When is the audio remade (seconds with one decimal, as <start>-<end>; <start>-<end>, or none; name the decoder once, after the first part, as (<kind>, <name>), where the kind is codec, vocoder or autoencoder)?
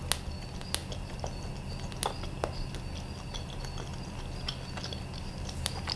none